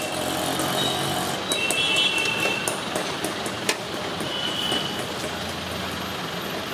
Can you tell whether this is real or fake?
real